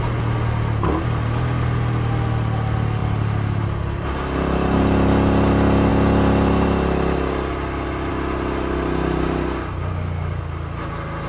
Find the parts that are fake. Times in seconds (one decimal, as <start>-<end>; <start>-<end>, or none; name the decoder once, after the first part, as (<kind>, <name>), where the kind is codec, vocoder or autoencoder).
none

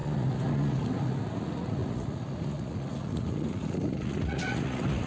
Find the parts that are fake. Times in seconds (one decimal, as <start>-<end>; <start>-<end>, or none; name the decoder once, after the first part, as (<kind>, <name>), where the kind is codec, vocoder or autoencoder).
0.0-5.1 (vocoder, Vocos)